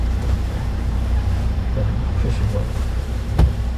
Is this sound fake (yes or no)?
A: yes